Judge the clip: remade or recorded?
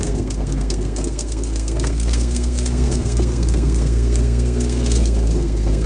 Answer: remade